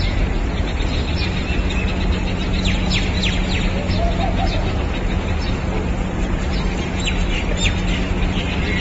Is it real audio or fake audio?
real